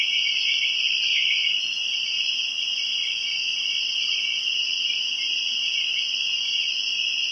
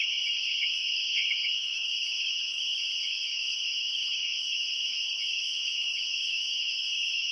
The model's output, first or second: second